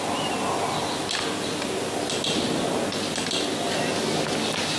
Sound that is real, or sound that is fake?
real